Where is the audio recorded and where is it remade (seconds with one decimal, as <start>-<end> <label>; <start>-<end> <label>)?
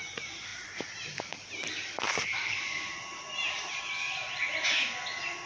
0.0-0.5 recorded; 0.5-3.8 remade; 3.8-5.5 recorded